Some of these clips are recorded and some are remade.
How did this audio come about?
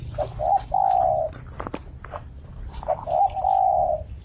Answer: recorded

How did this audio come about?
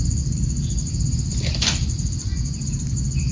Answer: recorded